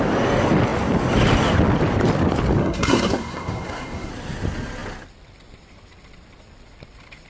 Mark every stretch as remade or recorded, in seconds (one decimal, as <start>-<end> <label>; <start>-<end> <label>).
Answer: 0.0-2.6 recorded; 2.6-4.1 remade; 4.1-7.3 recorded